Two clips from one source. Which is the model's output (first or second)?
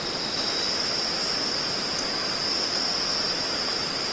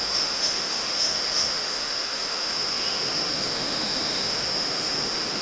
second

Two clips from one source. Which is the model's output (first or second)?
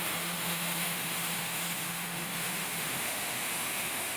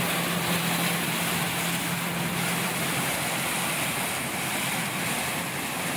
first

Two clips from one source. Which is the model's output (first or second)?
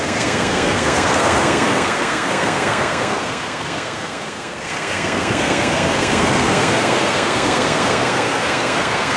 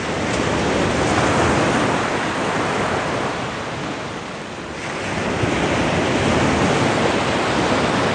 first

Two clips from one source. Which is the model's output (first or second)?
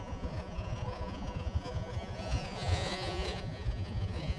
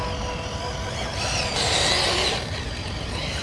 first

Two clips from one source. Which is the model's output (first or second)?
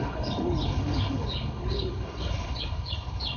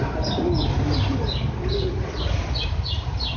first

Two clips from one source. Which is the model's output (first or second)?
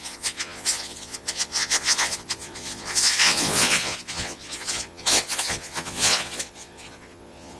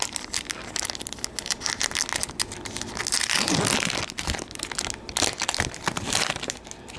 first